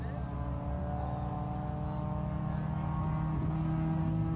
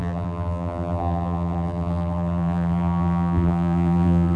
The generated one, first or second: second